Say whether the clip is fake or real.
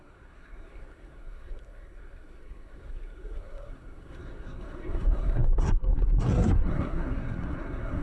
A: fake